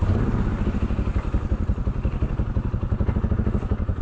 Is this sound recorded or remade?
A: recorded